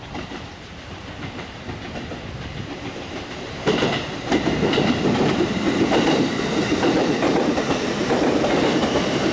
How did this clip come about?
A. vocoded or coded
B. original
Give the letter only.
A